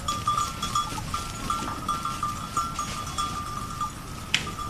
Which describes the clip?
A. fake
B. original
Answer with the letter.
B